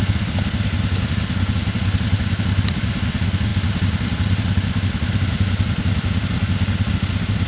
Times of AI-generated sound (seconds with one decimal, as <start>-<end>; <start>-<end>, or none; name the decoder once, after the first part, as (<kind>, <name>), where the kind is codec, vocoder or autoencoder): none